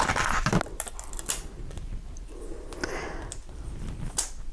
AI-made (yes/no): no